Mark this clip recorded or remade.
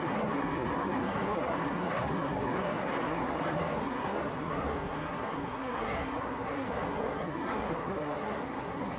remade